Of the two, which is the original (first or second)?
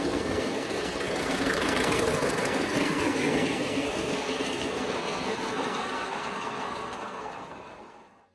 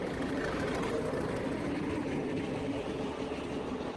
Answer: second